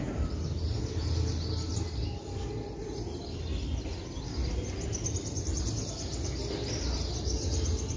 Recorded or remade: recorded